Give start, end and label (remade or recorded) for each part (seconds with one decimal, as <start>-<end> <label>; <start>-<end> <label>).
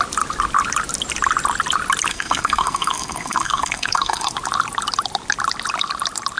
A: 0.0-2.1 recorded; 2.1-4.3 remade; 4.3-6.4 recorded